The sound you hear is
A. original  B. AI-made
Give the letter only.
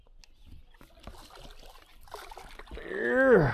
A